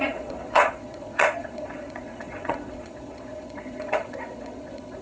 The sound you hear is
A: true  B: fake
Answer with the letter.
B